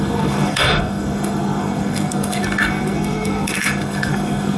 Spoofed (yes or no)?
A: yes